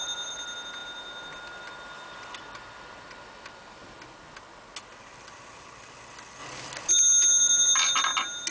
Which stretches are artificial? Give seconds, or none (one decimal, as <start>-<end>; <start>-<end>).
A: none